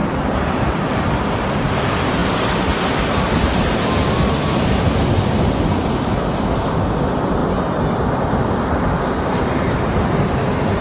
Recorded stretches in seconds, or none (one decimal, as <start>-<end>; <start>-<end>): 0.0-10.8